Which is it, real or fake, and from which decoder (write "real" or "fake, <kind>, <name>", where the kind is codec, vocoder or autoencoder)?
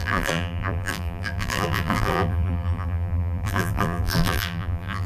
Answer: fake, vocoder, BigVGAN v2